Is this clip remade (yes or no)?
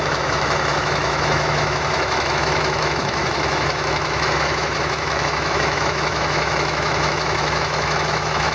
yes